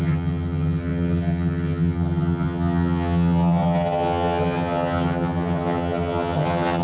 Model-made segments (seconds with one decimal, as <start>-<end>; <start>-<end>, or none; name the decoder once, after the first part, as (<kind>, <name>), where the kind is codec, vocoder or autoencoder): 0.0-6.8 (vocoder, HiFi-GAN)